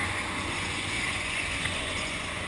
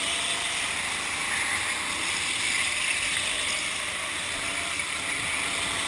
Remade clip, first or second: first